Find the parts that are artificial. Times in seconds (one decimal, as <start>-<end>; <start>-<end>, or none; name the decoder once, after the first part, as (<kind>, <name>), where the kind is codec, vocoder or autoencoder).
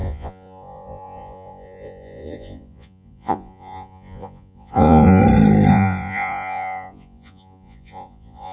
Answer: 0.0-5.2 (vocoder, Vocos); 5.7-8.5